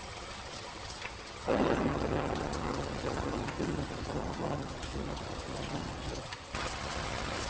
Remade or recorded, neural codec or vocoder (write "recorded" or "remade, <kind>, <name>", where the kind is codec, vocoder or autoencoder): remade, vocoder, HiFi-GAN